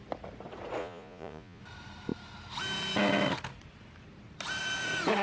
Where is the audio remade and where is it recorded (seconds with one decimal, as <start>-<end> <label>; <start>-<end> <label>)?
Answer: 0.0-0.8 recorded; 0.8-1.6 remade; 1.6-5.2 recorded